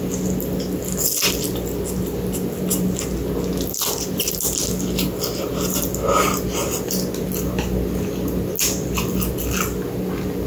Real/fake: real